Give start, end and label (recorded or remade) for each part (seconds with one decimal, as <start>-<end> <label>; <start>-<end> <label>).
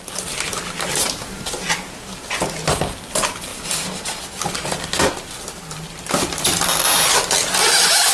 0.0-8.1 recorded